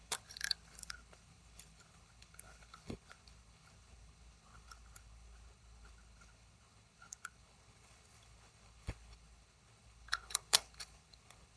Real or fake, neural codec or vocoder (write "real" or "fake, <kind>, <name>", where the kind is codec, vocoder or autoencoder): fake, codec, HILCodec